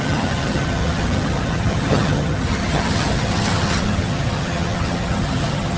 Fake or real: fake